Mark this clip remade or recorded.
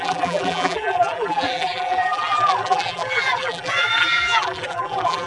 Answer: remade